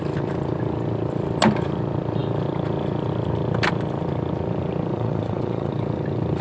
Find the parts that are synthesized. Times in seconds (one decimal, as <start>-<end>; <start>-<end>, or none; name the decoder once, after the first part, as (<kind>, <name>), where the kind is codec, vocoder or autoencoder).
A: 4.9-5.7 (vocoder, Vocos)